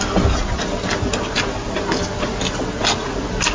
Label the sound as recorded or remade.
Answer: recorded